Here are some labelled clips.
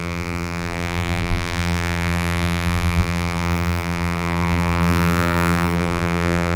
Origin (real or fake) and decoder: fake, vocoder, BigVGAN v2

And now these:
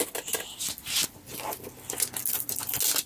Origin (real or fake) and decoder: real